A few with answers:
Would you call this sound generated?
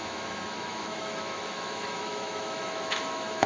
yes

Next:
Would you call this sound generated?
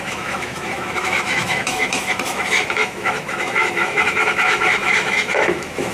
yes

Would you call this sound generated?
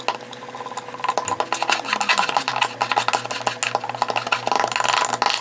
no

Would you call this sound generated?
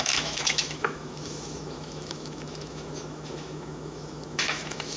yes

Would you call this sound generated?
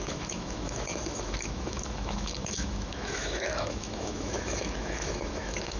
yes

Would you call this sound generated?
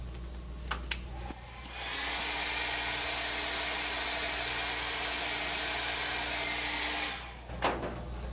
no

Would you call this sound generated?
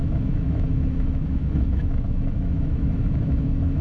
yes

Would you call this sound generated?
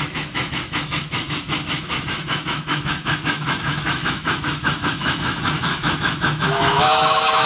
yes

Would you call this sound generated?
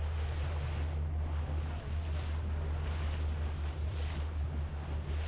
no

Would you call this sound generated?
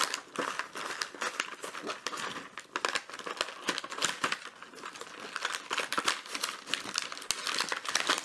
no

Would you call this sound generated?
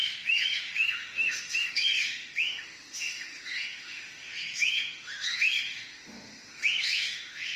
yes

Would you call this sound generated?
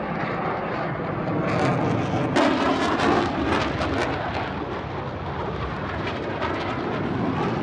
no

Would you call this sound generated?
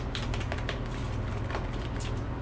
no